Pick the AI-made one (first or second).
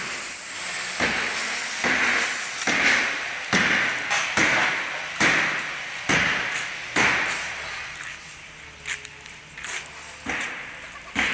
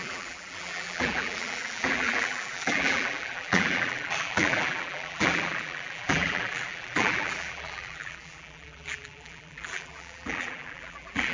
second